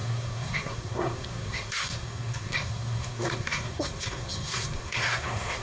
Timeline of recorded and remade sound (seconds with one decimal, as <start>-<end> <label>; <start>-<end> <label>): 0.0-5.6 remade